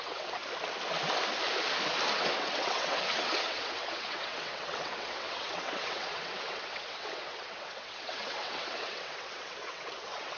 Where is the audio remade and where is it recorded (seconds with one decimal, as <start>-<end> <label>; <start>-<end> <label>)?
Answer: 0.0-0.4 remade; 0.4-2.1 recorded; 2.1-10.4 remade